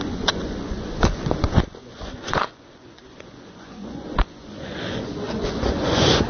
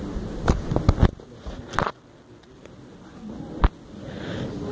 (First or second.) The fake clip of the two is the first